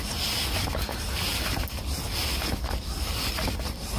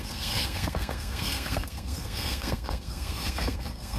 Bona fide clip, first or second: first